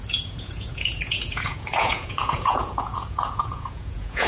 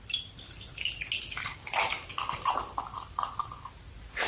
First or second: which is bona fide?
second